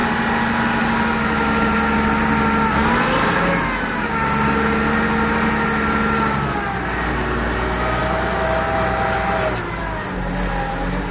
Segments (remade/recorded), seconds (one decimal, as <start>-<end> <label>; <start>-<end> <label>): 0.0-11.1 recorded